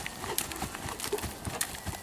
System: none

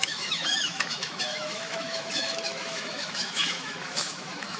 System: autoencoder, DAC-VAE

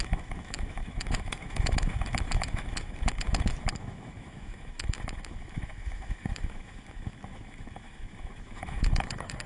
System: autoencoder, DAC-VAE